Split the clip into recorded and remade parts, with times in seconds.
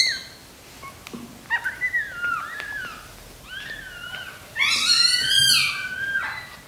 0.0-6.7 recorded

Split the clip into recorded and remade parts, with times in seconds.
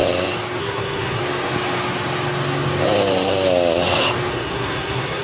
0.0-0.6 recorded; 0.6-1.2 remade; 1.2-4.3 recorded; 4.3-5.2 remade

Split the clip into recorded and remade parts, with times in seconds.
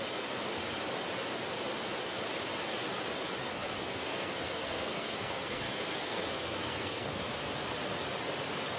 0.0-3.4 recorded; 3.4-7.2 remade; 7.2-8.8 recorded